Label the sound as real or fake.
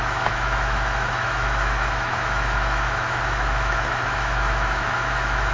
fake